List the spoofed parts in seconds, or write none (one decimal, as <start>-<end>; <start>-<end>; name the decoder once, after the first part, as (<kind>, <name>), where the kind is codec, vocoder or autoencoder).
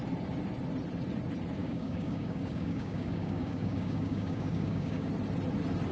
1.6-5.1 (codec, DAC)